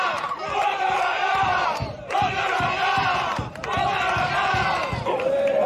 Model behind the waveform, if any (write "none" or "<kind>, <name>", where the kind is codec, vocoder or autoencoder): vocoder, BigVGAN v2